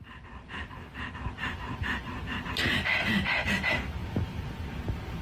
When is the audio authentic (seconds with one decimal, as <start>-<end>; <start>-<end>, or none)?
0.0-5.2